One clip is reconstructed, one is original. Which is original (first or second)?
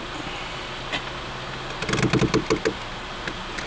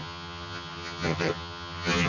first